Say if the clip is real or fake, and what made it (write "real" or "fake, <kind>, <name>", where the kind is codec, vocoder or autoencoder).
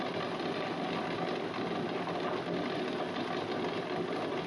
real